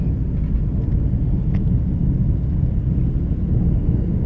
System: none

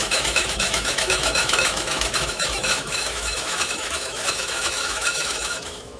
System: autoencoder, DAC-VAE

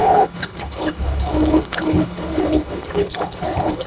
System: codec, HILCodec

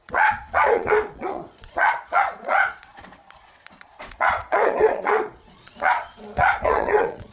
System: vocoder, Vocos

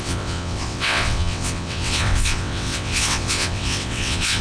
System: vocoder, WaveNeXt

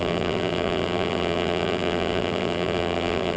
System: vocoder, BigVGAN v2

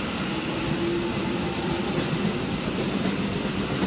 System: none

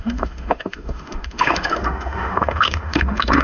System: autoencoder, DAC-VAE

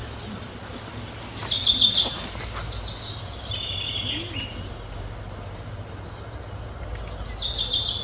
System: none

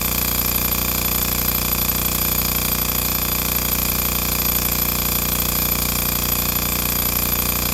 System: autoencoder, DAC-VAE